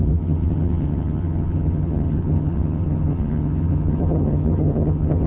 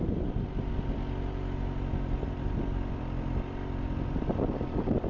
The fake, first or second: first